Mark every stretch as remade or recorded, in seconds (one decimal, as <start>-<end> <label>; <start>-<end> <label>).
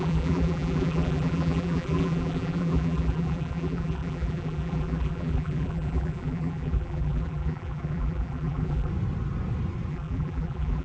0.0-8.9 remade; 8.9-9.9 recorded; 9.9-10.8 remade